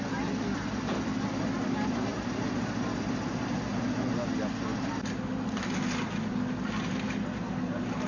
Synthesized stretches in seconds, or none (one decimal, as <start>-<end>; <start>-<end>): none